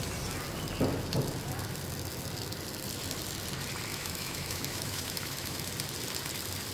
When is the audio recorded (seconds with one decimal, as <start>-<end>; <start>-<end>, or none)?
0.0-3.9; 5.7-6.7